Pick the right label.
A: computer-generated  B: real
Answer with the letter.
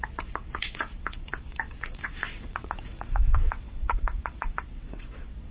A